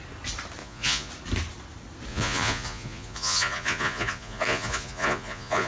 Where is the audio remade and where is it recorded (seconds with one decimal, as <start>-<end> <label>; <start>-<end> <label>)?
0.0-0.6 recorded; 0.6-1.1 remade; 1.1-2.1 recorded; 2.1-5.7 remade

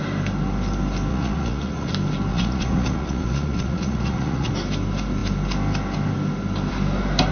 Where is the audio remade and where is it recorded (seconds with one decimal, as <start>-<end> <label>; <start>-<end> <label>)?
0.0-1.1 recorded; 1.1-1.9 remade; 1.9-2.3 recorded; 2.3-4.5 remade; 4.5-7.3 recorded

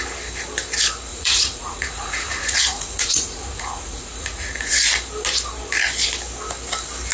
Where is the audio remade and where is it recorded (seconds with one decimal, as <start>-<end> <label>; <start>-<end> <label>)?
0.0-1.1 recorded; 1.1-4.7 remade; 4.7-7.1 recorded

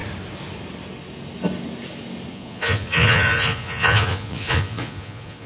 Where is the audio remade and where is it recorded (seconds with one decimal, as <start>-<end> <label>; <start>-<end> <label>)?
0.0-2.3 recorded; 2.3-5.5 remade

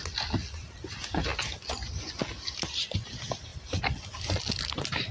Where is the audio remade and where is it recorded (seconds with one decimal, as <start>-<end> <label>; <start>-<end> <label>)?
0.0-5.1 recorded